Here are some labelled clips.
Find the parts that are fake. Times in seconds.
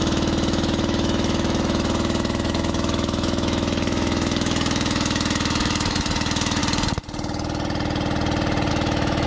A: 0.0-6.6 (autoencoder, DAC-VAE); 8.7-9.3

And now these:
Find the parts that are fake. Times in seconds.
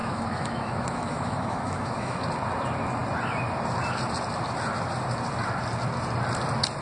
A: 0.0-2.2 (autoencoder, DAC-VAE)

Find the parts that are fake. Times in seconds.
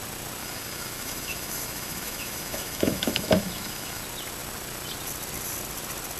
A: 0.4-4.0 (autoencoder, DAC-VAE)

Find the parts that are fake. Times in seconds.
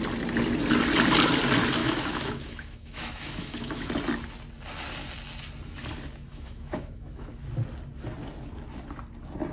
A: 1.8-3.9 (autoencoder, DAC-VAE); 6.3-7.3